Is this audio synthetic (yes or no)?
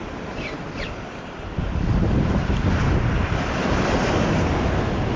no